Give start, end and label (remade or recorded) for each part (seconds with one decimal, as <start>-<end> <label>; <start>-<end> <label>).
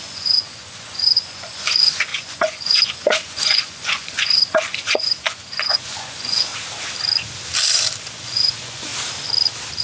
0.0-6.5 remade; 6.5-8.0 recorded; 8.0-8.9 remade; 8.9-9.8 recorded